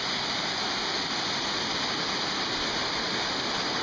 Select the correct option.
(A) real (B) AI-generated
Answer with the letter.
A